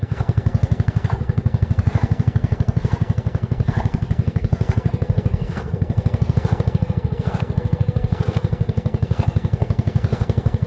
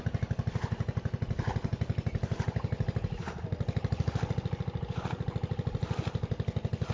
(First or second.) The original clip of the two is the second